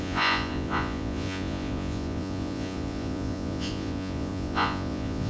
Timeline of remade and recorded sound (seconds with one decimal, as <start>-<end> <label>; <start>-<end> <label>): 0.0-5.3 remade